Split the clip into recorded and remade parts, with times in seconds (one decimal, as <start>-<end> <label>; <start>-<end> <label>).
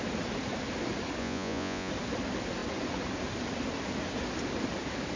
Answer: 0.0-1.2 recorded; 1.2-1.9 remade; 1.9-5.2 recorded